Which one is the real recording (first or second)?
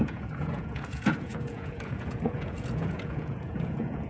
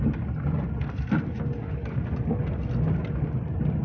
second